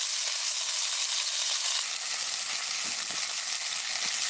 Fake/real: real